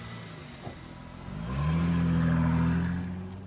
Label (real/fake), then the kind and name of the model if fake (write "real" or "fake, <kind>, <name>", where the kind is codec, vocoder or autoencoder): real